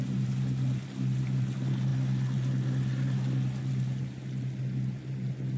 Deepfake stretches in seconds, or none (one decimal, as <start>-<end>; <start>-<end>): none

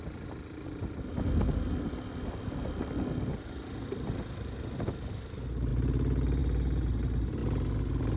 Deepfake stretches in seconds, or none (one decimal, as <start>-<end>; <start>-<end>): none

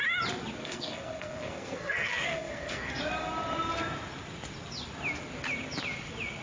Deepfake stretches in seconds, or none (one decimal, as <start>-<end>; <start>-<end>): 0.6-3.0

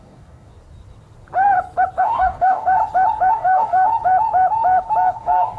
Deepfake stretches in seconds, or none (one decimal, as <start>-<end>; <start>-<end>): 0.0-0.5; 2.0-2.8; 3.3-3.9; 5.1-5.6

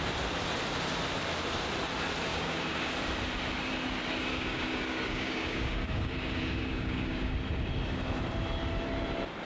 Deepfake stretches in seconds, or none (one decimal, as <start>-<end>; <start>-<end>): 2.3-2.9; 4.3-7.3

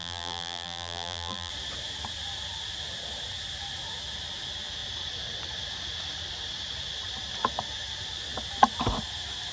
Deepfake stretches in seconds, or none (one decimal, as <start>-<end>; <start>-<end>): 0.0-1.5

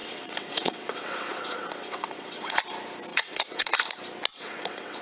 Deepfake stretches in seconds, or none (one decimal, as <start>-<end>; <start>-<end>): 0.0-2.6; 3.1-3.7; 4.3-5.0

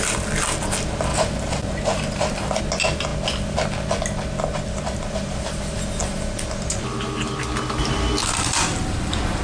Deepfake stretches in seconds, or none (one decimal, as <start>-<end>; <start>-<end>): 1.1-2.6; 8.7-9.4